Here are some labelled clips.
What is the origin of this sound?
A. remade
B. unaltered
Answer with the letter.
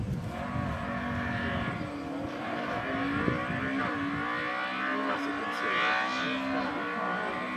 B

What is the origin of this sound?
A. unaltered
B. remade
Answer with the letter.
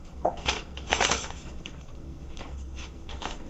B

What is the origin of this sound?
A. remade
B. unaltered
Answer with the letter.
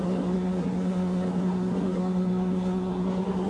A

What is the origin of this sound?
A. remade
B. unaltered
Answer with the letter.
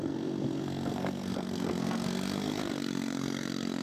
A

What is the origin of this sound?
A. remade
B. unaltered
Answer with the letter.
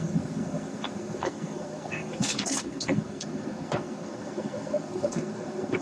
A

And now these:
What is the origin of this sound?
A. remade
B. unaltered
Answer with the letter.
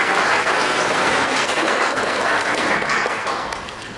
A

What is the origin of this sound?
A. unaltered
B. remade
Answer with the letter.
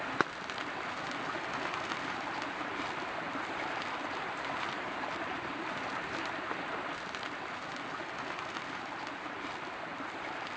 A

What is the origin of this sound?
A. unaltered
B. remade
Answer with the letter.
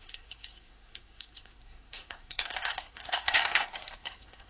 B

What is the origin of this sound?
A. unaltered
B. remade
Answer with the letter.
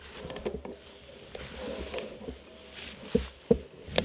A